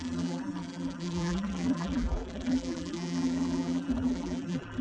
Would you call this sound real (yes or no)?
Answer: no